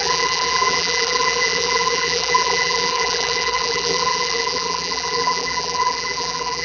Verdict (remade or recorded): remade